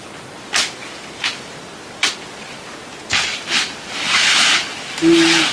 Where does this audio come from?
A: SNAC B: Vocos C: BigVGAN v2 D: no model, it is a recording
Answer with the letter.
D